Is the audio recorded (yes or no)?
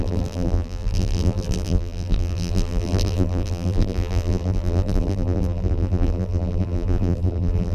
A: no